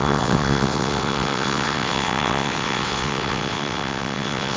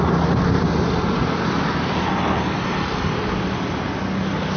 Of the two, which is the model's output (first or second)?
first